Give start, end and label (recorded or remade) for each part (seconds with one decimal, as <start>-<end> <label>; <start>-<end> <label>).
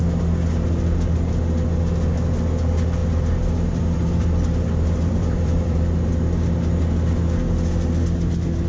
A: 0.0-3.0 recorded; 3.0-5.8 remade; 5.8-8.7 recorded